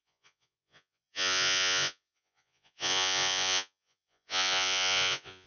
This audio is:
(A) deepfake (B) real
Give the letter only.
A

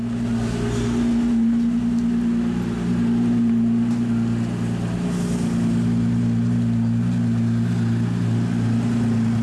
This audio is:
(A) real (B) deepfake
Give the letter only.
A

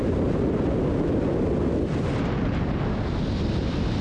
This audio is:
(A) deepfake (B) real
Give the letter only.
B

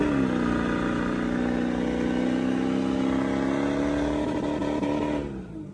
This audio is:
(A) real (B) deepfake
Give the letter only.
A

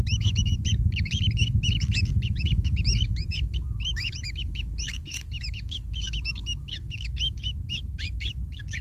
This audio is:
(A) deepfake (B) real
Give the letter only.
A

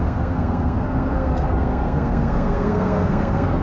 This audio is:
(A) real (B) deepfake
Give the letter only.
B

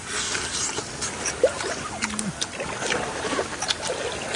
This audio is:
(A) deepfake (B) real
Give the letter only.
B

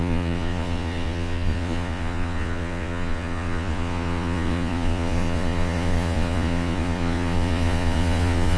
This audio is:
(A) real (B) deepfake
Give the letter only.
B